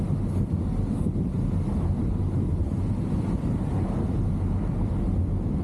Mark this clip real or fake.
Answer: real